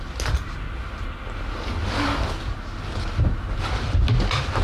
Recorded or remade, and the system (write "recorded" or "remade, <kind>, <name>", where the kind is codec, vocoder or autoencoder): recorded